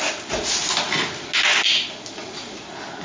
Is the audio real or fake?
real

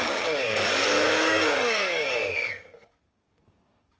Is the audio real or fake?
fake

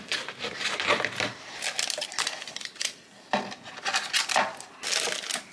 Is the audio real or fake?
real